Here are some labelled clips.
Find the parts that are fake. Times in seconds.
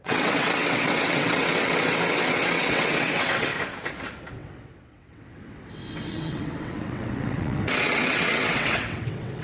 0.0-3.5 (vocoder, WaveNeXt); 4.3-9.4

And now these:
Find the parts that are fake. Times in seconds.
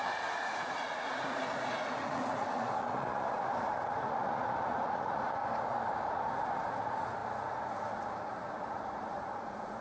0.0-5.4 (vocoder, Vocos); 6.0-9.8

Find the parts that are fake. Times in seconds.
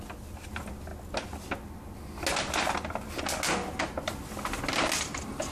none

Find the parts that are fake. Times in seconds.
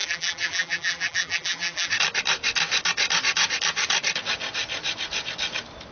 0.0-1.9 (vocoder, BigVGAN v2)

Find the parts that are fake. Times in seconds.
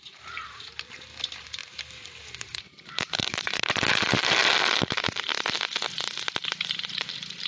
0.0-4.4 (vocoder, BigVGAN v2); 6.6-7.5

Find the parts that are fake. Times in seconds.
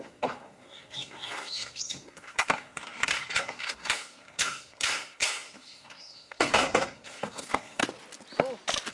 0.0-7.8 (codec, SNAC)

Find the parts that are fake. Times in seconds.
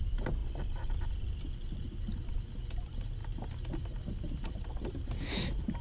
none